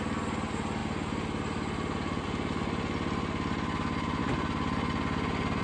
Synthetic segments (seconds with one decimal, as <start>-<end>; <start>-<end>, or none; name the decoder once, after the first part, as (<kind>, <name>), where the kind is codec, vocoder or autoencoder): none